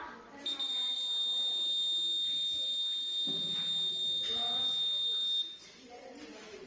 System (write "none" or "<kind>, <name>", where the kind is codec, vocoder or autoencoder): none